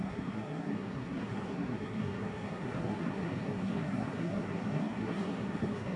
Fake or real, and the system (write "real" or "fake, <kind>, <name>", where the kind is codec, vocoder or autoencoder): fake, codec, SNAC